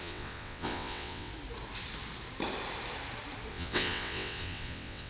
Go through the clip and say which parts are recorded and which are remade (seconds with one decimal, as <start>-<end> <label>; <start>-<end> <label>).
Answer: 0.0-1.3 remade; 1.3-3.5 recorded; 3.5-5.1 remade